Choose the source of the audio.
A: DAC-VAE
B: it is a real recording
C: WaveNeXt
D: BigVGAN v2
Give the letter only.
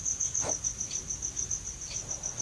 B